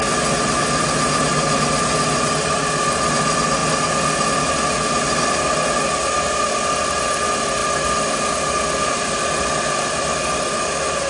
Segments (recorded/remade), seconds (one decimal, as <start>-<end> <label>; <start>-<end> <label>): 0.0-11.1 recorded